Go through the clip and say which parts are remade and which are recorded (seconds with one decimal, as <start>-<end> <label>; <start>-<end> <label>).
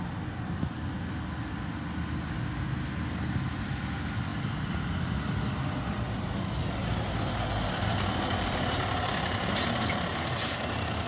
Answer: 0.0-11.1 recorded